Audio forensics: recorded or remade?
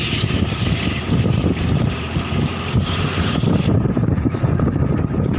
remade